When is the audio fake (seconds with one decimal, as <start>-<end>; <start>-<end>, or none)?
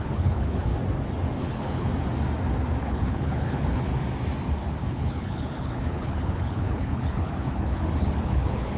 0.0-0.7; 1.4-1.9; 2.8-3.9; 4.9-8.8